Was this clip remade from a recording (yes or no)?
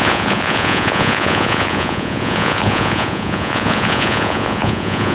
yes